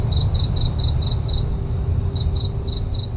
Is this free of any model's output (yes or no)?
yes